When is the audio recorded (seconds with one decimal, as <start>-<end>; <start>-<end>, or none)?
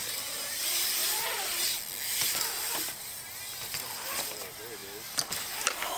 0.0-6.0